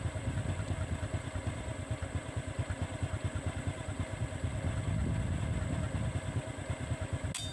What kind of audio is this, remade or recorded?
recorded